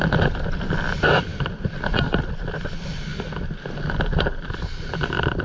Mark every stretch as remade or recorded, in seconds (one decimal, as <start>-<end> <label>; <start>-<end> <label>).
0.0-5.4 recorded